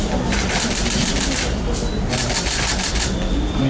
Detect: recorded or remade recorded